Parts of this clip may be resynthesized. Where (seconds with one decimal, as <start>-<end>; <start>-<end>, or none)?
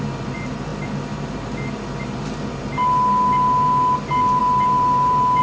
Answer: 4.4-5.4